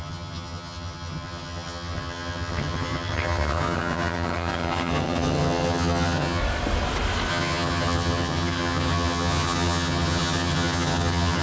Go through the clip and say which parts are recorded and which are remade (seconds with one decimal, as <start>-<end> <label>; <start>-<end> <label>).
0.0-6.4 remade; 6.4-7.3 recorded; 7.3-11.4 remade